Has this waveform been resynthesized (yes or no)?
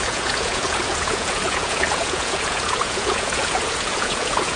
yes